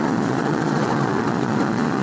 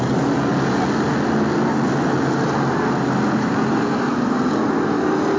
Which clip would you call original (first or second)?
second